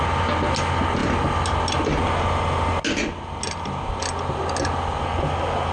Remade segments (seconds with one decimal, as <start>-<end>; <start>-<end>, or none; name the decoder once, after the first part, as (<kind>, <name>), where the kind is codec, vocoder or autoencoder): none